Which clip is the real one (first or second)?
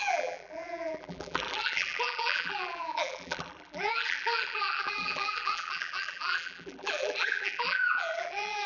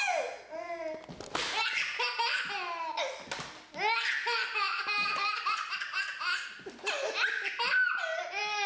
second